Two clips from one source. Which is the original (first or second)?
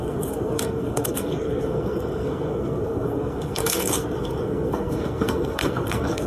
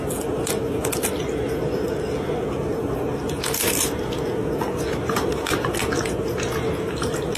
second